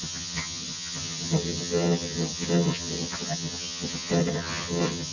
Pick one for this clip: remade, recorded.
remade